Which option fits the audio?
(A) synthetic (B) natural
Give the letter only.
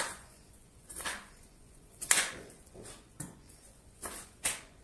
A